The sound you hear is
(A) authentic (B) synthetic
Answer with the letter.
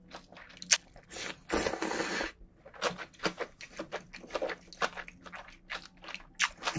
A